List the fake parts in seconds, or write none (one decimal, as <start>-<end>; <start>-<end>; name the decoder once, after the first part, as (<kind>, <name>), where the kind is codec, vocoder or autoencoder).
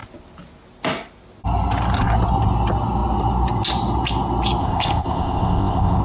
4.6-6.0 (codec, ZipCodec)